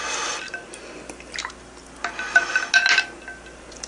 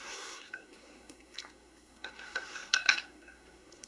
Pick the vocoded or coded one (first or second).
second